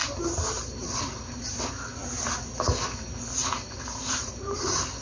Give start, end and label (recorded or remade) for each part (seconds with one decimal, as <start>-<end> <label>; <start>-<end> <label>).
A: 0.0-3.4 recorded; 3.4-4.6 remade; 4.6-5.0 recorded